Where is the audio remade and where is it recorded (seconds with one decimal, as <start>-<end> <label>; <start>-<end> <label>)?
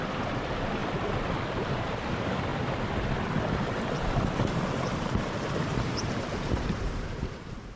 0.0-0.8 remade; 0.8-1.7 recorded; 1.7-2.5 remade; 2.5-3.5 recorded; 3.5-7.8 remade